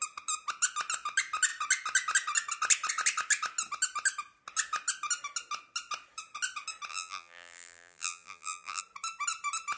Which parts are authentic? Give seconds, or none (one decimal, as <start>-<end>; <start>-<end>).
0.0-6.9; 8.8-9.8